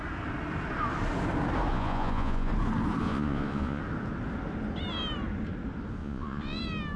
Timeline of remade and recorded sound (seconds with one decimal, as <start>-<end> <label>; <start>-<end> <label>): 0.0-1.7 recorded; 1.7-2.5 remade; 2.5-3.0 recorded; 3.0-3.8 remade; 3.8-6.0 recorded; 6.0-6.6 remade; 6.6-7.0 recorded